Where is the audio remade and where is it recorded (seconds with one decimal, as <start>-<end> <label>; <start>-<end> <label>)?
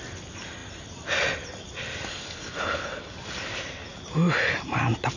0.0-2.1 recorded; 2.1-3.1 remade; 3.1-5.2 recorded